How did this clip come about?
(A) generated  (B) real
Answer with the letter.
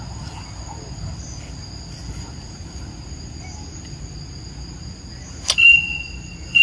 B